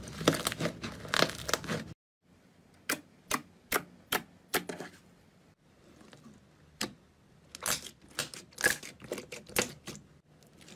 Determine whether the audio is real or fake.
real